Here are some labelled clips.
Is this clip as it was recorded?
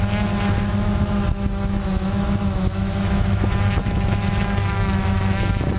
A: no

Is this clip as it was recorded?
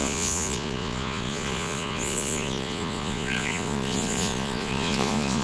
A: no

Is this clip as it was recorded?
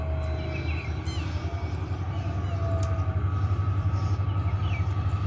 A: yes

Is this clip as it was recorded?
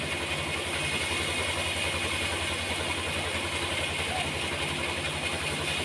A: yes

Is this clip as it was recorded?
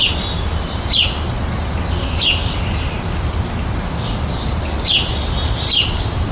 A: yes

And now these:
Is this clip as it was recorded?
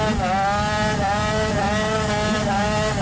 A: yes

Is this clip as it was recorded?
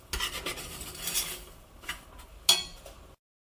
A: yes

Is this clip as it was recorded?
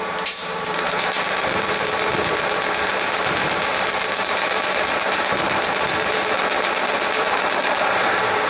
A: no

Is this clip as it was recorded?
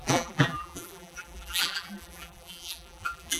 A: no